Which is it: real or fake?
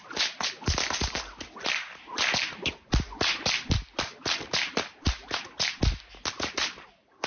real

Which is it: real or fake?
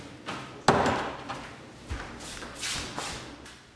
real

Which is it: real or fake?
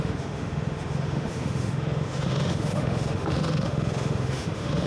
fake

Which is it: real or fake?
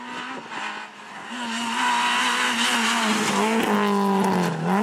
real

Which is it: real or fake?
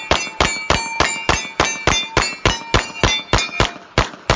real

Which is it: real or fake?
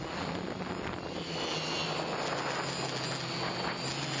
real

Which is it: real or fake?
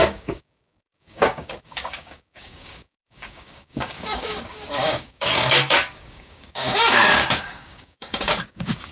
fake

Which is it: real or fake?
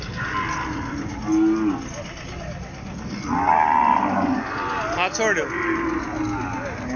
real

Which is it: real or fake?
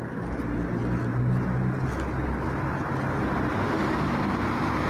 real